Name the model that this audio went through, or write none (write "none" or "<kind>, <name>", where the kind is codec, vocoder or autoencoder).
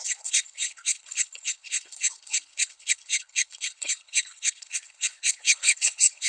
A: codec, HILCodec